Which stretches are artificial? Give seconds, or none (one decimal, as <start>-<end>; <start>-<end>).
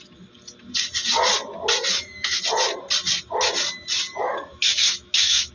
1.9-2.4; 4.5-5.5